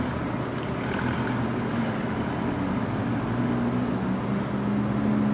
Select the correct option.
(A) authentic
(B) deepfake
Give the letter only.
A